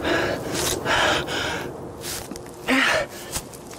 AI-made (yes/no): no